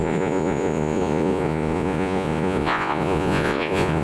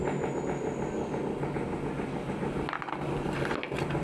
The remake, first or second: first